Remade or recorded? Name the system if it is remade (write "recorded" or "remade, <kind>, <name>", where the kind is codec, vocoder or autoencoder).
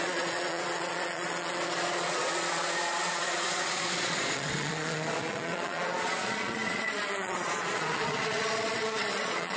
remade, vocoder, Vocos